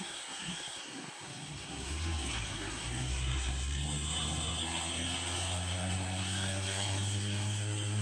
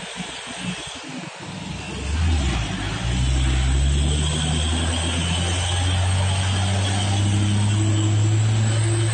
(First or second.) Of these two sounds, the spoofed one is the first